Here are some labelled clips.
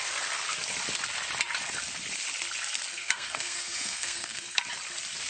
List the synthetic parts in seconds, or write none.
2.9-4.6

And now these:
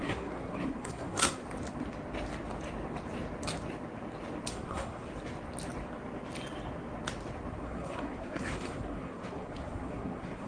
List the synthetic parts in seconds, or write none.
0.0-1.4; 4.5-5.1; 7.5-10.5

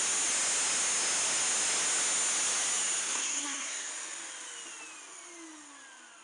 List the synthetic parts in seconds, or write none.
3.0-3.9

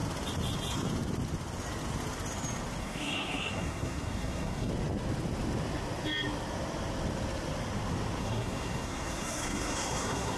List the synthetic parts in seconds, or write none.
2.8-4.7; 8.2-10.4

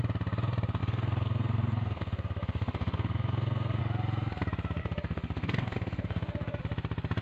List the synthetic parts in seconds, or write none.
0.8-3.8; 4.8-6.6

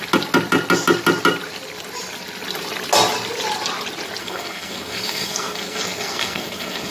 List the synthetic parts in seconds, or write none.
4.2-6.9

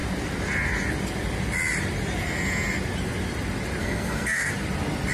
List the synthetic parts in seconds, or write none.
3.8-4.5

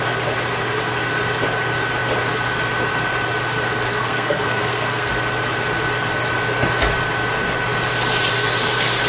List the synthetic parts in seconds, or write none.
4.0-5.1